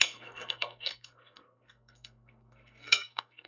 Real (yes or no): no